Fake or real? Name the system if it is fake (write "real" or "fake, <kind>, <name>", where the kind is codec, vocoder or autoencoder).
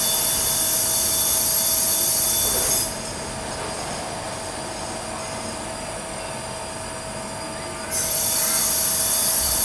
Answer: real